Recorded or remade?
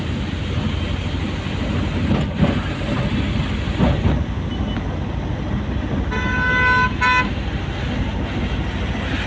recorded